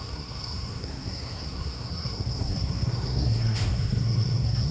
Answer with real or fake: fake